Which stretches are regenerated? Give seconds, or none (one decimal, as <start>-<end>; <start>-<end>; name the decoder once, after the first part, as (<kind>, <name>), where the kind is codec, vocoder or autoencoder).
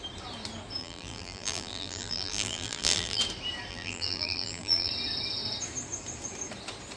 0.8-3.2 (vocoder, BigVGAN v2); 3.7-4.9